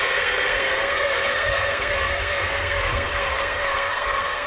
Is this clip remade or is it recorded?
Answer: remade